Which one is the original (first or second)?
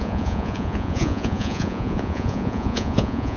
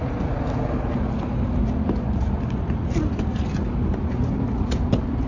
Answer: second